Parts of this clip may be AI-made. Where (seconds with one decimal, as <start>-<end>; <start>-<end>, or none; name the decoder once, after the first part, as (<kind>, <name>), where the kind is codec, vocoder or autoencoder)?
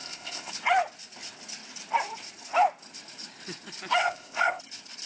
0.0-0.5 (codec, ZipCodec); 4.0-4.6